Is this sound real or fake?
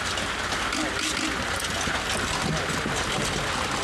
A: real